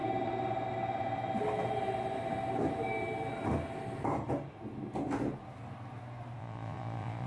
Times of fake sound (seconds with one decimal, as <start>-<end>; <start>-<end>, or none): 6.4-7.3